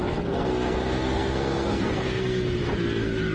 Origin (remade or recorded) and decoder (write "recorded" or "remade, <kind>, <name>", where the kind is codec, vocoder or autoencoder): remade, codec, SNAC